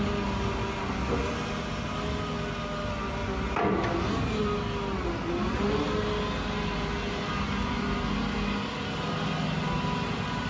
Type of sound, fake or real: real